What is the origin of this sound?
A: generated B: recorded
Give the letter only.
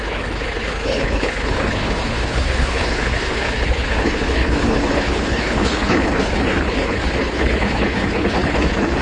A